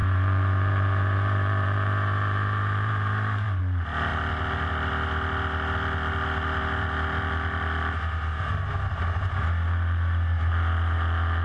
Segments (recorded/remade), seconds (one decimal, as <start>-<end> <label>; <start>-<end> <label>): 0.0-3.6 remade; 3.6-11.4 recorded